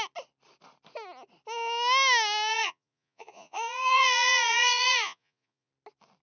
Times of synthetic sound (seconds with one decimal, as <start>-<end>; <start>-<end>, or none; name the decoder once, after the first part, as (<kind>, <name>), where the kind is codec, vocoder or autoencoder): 2.5-5.7 (vocoder, Vocos)